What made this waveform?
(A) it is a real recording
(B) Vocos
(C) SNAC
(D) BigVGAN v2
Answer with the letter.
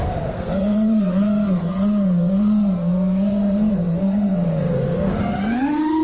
C